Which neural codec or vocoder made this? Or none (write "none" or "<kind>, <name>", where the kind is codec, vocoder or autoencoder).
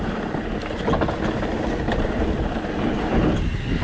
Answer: none